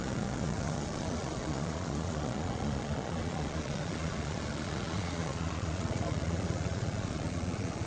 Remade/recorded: remade